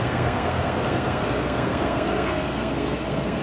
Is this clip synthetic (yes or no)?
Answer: yes